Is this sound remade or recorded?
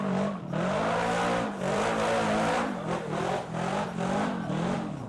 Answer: recorded